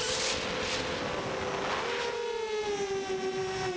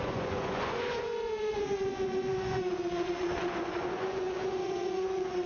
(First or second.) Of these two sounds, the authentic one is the first